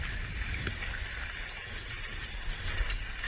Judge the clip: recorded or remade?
recorded